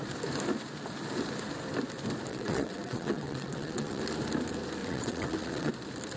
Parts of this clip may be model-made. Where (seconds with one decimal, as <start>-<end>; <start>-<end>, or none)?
2.3-4.0; 4.8-5.7